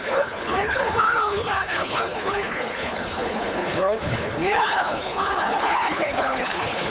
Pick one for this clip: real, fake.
fake